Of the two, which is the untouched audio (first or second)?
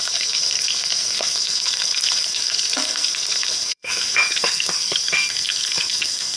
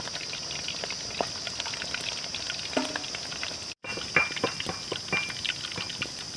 second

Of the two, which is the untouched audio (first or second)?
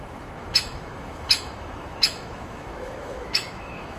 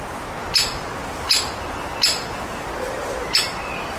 second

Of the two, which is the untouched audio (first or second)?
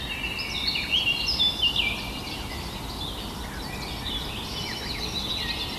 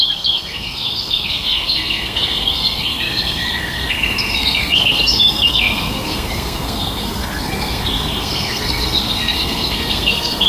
first